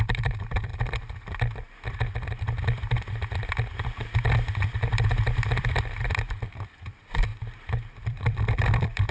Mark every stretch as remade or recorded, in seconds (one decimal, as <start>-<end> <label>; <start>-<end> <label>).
0.0-0.7 remade; 0.7-4.7 recorded; 4.7-7.3 remade; 7.3-7.9 recorded; 7.9-9.1 remade